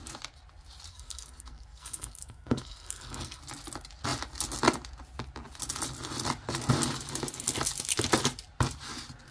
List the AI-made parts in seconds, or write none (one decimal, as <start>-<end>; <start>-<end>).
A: 0.9-3.4